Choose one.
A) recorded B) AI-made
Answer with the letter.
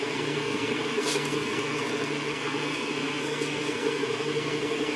B